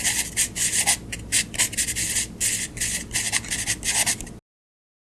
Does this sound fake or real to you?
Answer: real